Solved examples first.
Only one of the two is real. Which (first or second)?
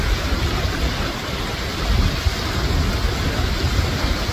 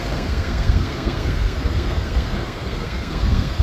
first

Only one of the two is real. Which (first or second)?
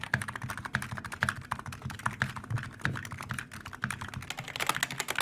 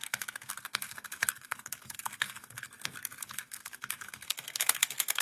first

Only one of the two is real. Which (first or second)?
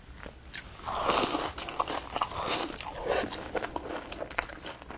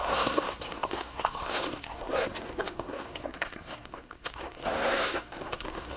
first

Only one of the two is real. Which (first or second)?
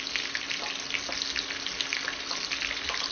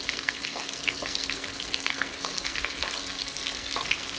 first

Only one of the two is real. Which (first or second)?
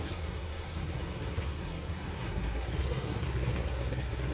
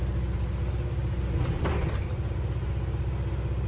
second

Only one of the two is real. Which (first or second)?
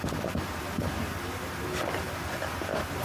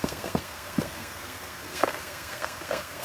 first